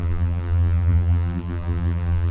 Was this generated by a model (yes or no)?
yes